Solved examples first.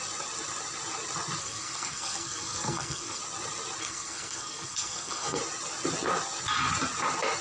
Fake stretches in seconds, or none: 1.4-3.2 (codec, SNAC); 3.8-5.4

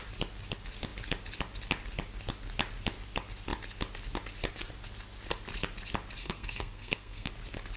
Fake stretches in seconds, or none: 6.2-7.3 (codec, SNAC)

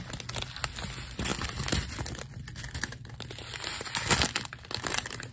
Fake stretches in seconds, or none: none

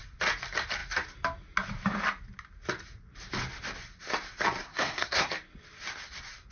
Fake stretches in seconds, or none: 4.6-5.3 (codec, SNAC)